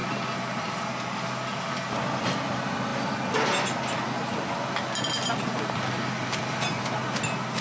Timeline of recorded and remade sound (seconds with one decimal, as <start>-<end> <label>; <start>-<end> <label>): 0.0-7.6 recorded